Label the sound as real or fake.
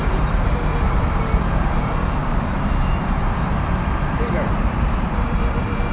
fake